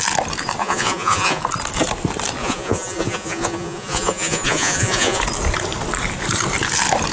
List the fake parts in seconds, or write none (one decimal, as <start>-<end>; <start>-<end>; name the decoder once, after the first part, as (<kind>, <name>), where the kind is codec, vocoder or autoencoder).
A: 0.6-1.4 (vocoder, Vocos); 2.4-5.2